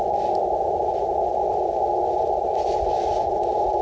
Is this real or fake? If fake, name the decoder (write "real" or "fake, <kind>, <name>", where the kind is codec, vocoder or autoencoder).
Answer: real